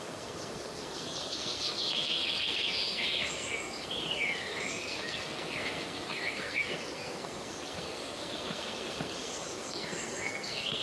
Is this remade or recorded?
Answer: remade